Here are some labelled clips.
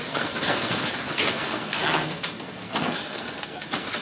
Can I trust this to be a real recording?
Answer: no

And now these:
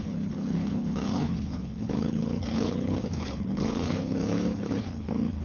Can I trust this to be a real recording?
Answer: no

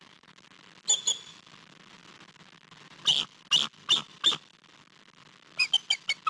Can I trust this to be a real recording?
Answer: yes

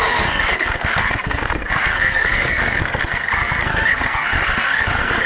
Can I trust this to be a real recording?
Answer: no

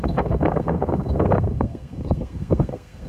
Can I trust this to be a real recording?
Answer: no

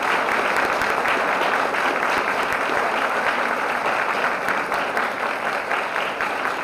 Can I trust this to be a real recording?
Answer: yes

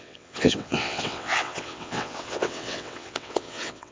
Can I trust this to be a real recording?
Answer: no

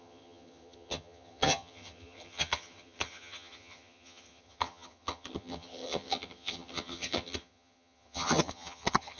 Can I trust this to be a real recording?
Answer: no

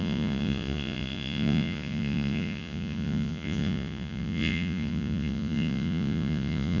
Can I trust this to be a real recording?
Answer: no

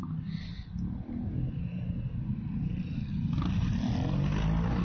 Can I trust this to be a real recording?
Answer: yes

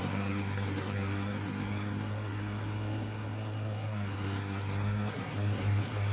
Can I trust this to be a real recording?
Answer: no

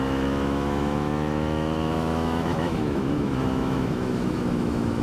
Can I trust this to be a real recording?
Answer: no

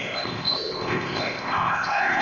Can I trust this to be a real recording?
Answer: no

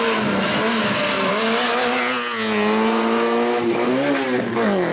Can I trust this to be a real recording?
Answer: yes